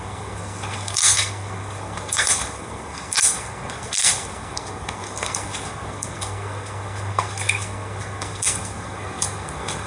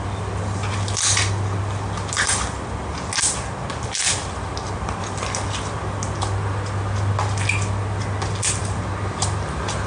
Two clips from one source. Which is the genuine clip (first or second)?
second